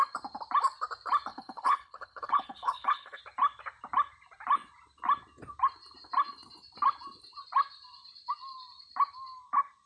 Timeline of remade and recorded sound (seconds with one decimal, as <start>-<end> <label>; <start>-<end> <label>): 0.0-1.3 recorded; 1.3-3.2 remade; 3.2-9.9 recorded